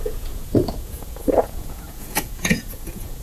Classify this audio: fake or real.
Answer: fake